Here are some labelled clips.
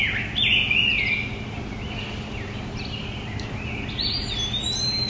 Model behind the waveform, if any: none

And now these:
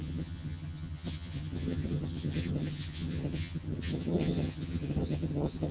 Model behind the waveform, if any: vocoder, HiFi-GAN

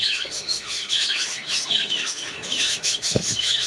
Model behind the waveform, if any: autoencoder, DAC-VAE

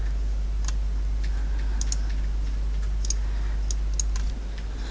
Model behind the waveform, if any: none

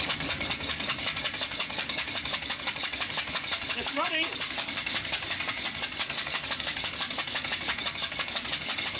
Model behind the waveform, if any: codec, DAC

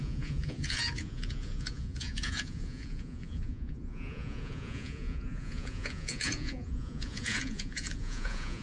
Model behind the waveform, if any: vocoder, Vocos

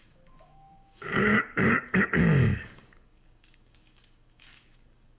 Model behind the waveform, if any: codec, DAC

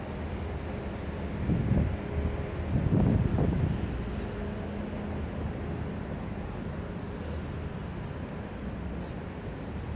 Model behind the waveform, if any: none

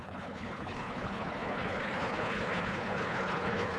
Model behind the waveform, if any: codec, HILCodec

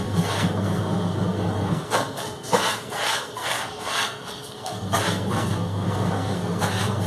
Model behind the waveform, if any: codec, SNAC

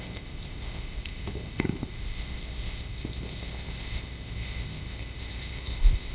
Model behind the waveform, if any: codec, ZipCodec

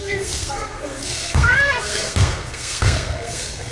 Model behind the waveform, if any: codec, SNAC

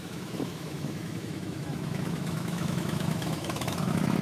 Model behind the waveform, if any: autoencoder, DAC-VAE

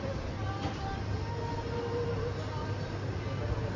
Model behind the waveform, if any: none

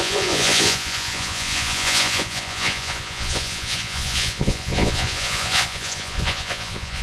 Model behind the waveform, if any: vocoder, Vocos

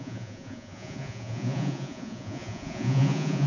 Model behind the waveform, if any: vocoder, Vocos